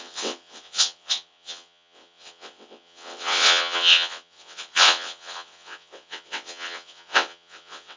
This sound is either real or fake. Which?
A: fake